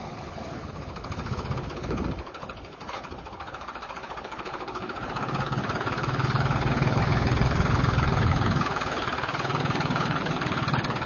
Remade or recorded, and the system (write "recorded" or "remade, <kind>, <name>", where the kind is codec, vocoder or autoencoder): remade, codec, HILCodec